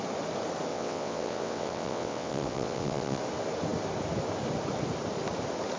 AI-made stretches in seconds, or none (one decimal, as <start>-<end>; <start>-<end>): 0.7-3.2